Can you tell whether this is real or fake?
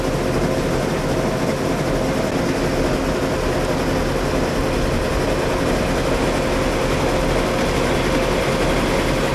real